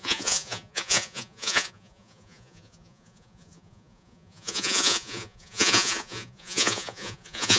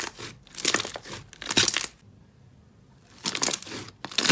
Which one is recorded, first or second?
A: second